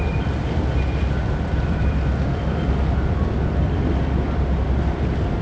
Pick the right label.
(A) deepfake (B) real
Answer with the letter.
A